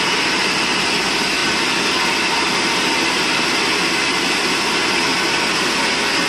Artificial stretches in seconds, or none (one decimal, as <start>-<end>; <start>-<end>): none